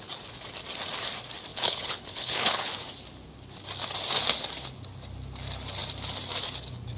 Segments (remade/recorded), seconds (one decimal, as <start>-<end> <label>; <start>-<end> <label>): 0.0-1.5 recorded; 1.5-2.7 remade; 2.7-7.0 recorded